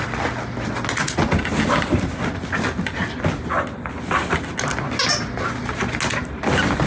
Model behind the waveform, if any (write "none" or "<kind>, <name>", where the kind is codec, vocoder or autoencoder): none